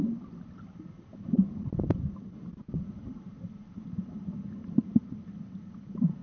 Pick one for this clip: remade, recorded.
recorded